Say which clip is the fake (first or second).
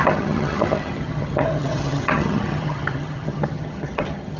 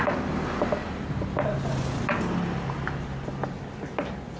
first